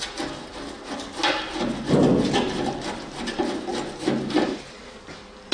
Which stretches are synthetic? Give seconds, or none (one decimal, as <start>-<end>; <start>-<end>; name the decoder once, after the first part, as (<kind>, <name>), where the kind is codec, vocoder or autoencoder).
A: none